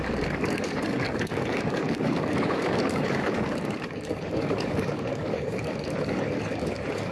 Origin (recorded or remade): remade